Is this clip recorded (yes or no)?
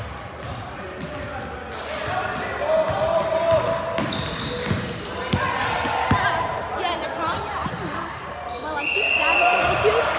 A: yes